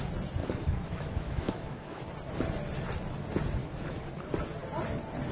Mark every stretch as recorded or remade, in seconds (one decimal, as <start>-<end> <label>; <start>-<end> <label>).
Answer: 0.0-0.4 recorded; 0.4-2.0 remade; 2.0-3.6 recorded; 3.6-4.1 remade; 4.1-5.3 recorded